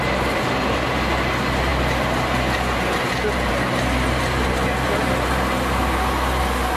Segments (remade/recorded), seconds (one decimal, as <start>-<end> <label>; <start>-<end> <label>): 0.0-6.8 recorded

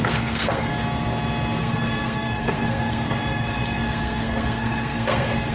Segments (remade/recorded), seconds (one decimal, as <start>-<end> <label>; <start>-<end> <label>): 0.0-0.7 remade; 0.7-1.6 recorded; 1.6-5.5 remade

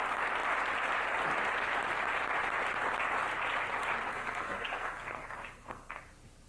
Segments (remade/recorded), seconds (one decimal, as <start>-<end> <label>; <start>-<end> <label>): 0.0-4.1 recorded; 4.1-6.0 remade; 6.0-6.5 recorded

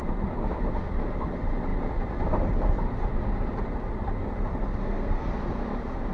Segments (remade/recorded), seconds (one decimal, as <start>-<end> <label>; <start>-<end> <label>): 0.0-4.8 recorded; 4.8-5.3 remade; 5.3-6.1 recorded

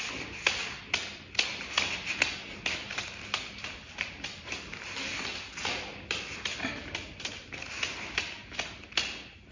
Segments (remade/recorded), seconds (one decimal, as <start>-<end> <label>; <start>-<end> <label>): 0.0-9.5 recorded

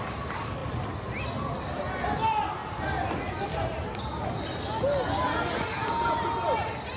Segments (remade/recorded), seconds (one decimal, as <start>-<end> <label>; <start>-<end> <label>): 0.0-7.0 recorded